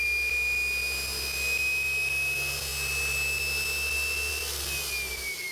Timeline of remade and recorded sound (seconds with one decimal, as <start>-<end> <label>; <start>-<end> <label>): 0.0-5.5 recorded